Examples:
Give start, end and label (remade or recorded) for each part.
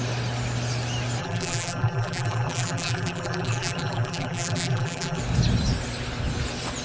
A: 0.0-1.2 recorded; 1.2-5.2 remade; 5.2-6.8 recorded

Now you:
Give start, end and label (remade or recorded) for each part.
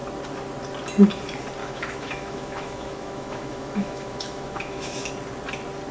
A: 0.0-1.6 recorded; 1.6-5.1 remade; 5.1-5.9 recorded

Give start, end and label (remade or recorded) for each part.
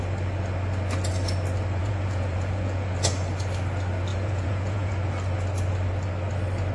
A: 0.0-1.8 recorded; 1.8-2.9 remade; 2.9-4.1 recorded; 4.1-4.9 remade; 4.9-6.7 recorded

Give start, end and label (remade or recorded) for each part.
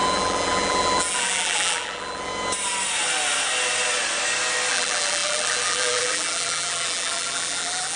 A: 0.0-2.3 remade; 2.3-4.7 recorded; 4.7-8.0 remade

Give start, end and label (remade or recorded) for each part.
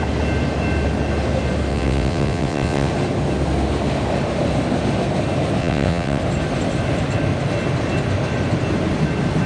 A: 0.0-1.7 recorded; 1.7-2.9 remade; 2.9-5.6 recorded; 5.6-6.2 remade; 6.2-9.5 recorded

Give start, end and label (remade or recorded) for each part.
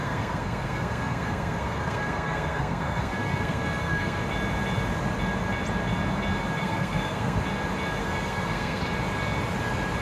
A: 0.0-4.2 remade; 4.2-6.6 recorded; 6.6-7.4 remade; 7.4-8.0 recorded; 8.0-8.8 remade; 8.8-10.0 recorded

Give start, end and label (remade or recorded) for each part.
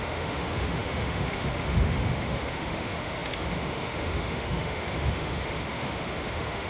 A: 0.0-6.7 remade